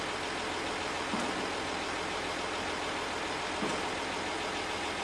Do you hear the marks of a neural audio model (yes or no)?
no